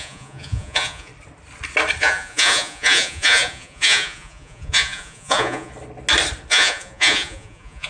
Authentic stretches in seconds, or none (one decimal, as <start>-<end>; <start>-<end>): 1.1-2.0; 5.7-6.5